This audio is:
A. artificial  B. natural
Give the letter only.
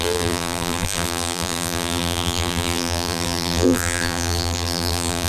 A